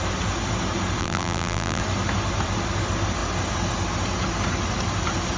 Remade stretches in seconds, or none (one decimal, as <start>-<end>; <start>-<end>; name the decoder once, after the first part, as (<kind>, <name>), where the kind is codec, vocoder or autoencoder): 1.0-1.8 (vocoder, BigVGAN v2)